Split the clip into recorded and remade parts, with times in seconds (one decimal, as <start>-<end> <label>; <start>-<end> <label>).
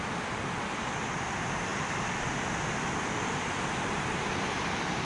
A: 0.0-5.0 recorded